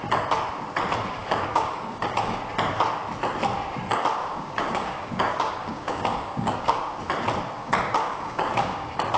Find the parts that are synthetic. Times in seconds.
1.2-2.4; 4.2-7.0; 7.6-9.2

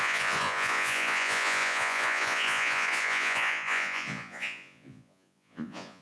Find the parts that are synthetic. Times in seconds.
0.0-6.0

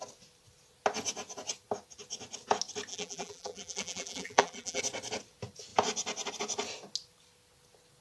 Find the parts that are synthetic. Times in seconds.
2.9-4.8

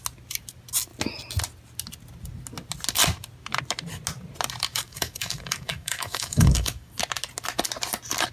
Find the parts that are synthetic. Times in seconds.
4.7-6.9

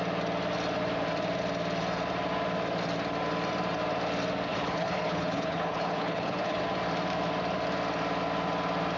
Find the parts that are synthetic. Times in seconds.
4.5-6.6